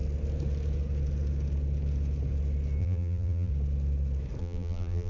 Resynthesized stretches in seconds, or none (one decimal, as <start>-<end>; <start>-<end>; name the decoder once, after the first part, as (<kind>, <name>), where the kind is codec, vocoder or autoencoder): 2.8-3.5 (vocoder, BigVGAN v2); 4.4-5.1